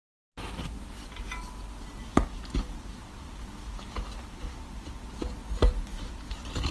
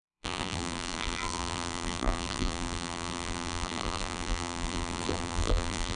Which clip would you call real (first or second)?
first